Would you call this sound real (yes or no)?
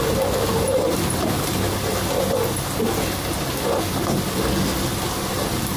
yes